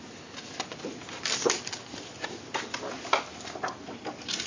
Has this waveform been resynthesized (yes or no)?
no